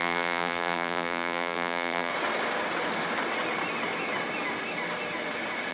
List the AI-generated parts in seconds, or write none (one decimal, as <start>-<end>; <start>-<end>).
0.0-2.1